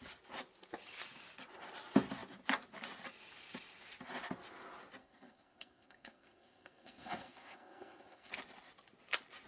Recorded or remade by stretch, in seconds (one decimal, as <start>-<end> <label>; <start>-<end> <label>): 0.0-5.0 recorded; 5.0-8.3 remade; 8.3-9.5 recorded

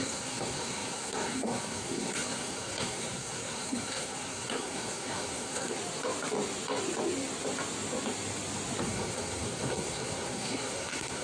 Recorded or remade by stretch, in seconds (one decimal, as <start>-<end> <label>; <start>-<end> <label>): 0.0-5.8 remade; 5.8-8.8 recorded; 8.8-11.2 remade

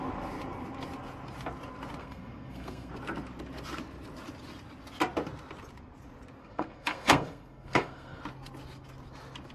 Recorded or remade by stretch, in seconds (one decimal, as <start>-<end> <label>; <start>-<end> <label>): 0.0-2.0 recorded; 2.0-2.9 remade; 2.9-6.4 recorded; 6.4-8.2 remade; 8.2-9.5 recorded

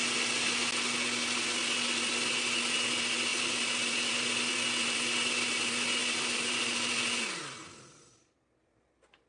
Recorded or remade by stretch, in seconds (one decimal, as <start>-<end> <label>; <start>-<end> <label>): 0.0-9.3 recorded

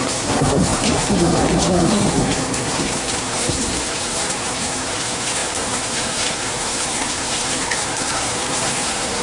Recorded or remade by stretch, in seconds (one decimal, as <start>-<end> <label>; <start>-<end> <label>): 0.0-9.2 remade

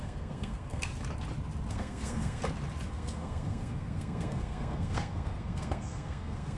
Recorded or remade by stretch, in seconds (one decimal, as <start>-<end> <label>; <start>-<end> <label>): 0.0-0.9 remade; 0.9-1.7 recorded; 1.7-2.4 remade; 2.4-2.9 recorded; 2.9-6.6 remade

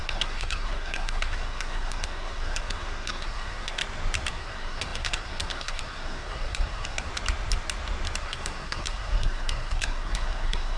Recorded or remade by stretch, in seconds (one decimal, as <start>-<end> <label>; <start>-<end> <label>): 0.0-3.8 remade; 3.8-4.3 recorded; 4.3-7.1 remade; 7.1-8.2 recorded; 8.2-10.8 remade